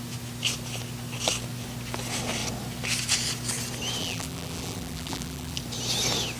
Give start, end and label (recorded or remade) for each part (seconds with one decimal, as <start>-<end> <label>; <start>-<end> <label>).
0.0-4.0 recorded; 4.0-5.6 remade; 5.6-6.4 recorded